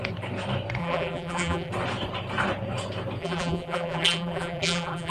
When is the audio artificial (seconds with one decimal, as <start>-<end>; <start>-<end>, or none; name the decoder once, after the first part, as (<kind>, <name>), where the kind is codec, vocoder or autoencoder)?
0.8-1.7 (vocoder, BigVGAN v2); 3.2-5.1